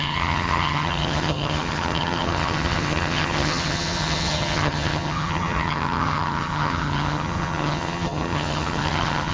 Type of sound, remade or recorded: remade